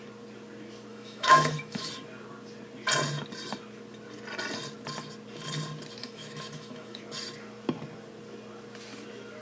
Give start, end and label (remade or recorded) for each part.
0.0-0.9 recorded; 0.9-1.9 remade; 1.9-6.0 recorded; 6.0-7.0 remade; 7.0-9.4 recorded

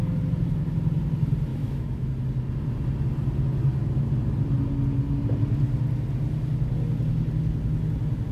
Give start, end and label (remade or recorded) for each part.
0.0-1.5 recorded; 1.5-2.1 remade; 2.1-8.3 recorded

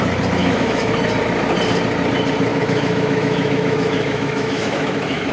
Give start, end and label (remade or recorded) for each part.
0.0-0.4 recorded; 0.4-0.9 remade; 0.9-2.5 recorded; 2.5-5.3 remade

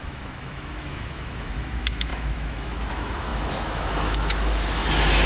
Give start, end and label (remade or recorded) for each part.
0.0-4.8 remade; 4.8-5.3 recorded

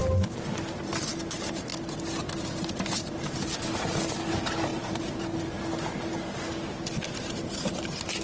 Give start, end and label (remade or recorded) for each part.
0.0-8.2 recorded